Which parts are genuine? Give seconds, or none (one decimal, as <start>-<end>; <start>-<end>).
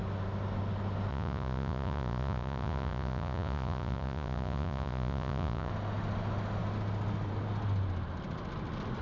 0.0-1.1; 5.7-9.0